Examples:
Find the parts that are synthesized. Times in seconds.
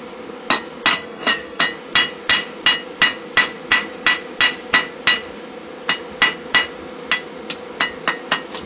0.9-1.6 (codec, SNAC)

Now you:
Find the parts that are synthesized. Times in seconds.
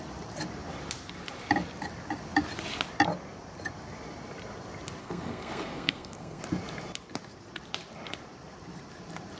5.0-6.4 (codec, SNAC)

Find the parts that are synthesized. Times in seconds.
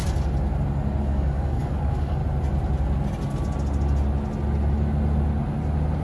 1.0-2.2 (codec, DAC)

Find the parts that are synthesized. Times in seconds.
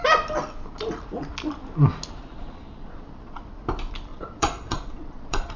2.2-3.4 (vocoder, Vocos); 4.1-5.6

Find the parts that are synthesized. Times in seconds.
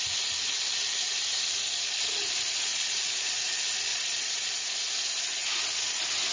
2.7-3.4 (vocoder, Vocos); 3.9-4.6